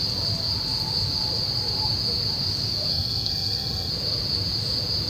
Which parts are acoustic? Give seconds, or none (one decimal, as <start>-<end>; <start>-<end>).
0.0-2.9; 3.9-5.1